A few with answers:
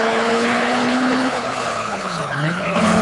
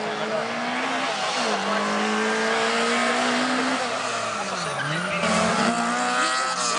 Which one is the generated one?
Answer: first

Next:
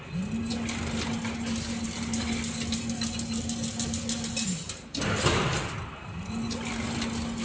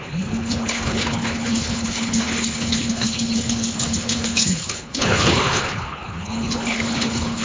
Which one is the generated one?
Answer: second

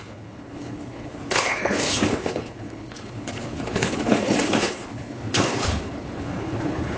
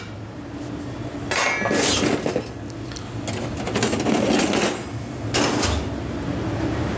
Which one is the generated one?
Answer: first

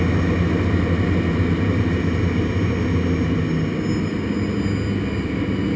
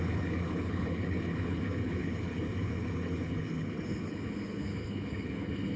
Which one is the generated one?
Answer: second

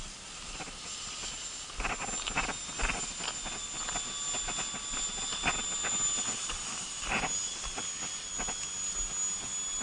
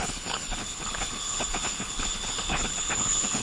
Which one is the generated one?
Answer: second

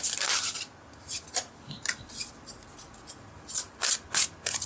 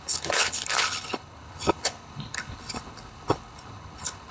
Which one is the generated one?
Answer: second